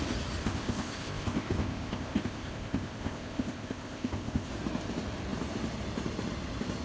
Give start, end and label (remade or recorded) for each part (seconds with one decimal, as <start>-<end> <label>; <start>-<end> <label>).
0.0-0.4 recorded; 0.4-4.5 remade; 4.5-6.8 recorded